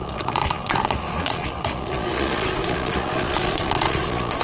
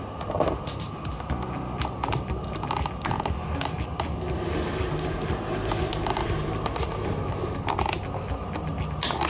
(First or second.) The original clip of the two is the second